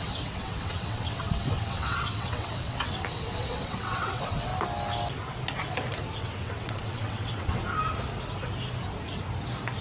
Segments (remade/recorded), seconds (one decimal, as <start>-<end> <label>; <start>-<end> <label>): 0.0-4.5 remade; 4.5-6.2 recorded; 6.2-7.6 remade; 7.6-9.8 recorded